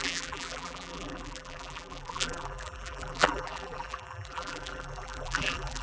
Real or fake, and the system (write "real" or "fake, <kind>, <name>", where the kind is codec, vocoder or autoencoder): fake, vocoder, BigVGAN v2